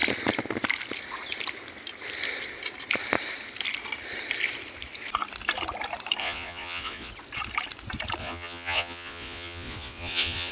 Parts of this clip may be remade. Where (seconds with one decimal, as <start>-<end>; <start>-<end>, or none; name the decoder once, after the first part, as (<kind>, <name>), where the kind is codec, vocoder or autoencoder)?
6.2-7.1 (vocoder, Vocos); 8.2-10.5

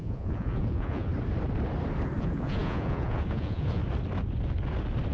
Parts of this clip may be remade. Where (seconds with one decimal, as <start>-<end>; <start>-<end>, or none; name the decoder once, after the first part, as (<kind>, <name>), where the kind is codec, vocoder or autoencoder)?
0.0-1.1 (vocoder, Vocos); 2.2-3.8

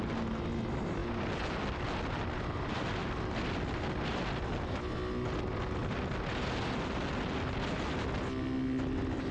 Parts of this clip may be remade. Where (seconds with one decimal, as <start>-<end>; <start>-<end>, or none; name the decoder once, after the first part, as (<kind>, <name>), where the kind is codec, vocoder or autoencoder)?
none

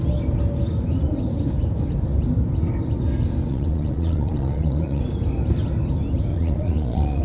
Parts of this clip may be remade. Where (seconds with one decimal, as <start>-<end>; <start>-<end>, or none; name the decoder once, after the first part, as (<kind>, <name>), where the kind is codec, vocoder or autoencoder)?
3.5-5.0 (vocoder, Vocos); 6.3-7.2

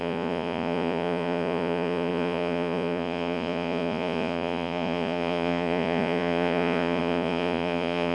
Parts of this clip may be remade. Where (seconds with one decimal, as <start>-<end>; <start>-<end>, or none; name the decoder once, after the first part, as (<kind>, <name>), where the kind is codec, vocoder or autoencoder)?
0.0-8.1 (vocoder, Vocos)

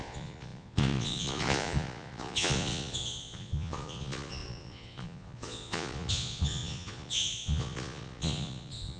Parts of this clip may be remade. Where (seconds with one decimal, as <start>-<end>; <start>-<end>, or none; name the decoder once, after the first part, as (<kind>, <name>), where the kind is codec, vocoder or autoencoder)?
0.0-9.0 (vocoder, Vocos)

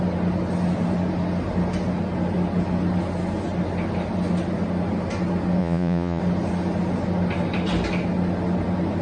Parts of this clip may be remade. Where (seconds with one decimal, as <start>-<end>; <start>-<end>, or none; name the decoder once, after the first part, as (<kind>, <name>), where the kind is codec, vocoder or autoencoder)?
5.6-6.2 (vocoder, Vocos)

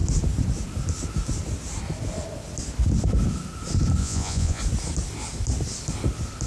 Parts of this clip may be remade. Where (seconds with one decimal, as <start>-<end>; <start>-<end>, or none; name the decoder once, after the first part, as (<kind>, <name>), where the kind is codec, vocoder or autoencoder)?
4.0-4.6 (vocoder, Vocos)